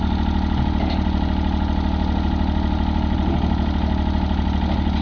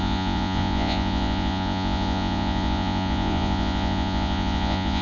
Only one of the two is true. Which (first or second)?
first